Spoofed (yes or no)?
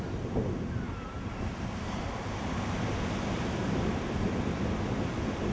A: no